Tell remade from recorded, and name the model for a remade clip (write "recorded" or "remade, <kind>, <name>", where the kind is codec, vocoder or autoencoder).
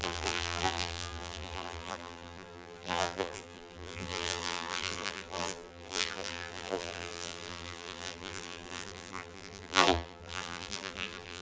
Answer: remade, vocoder, BigVGAN v2